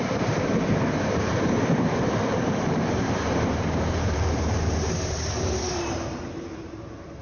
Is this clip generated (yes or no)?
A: yes